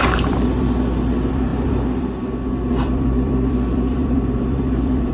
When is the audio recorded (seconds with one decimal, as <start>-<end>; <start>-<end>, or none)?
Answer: none